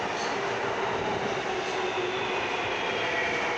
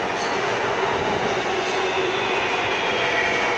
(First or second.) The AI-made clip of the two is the second